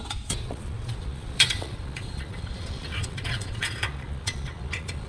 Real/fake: fake